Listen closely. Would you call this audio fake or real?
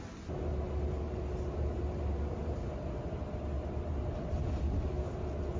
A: real